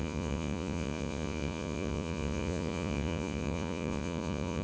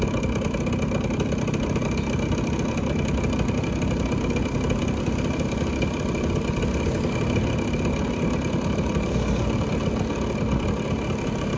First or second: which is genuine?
second